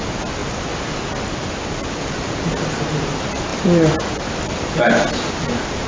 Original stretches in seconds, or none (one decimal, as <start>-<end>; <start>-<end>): 0.0-5.9